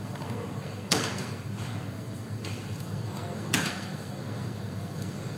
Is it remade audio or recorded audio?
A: remade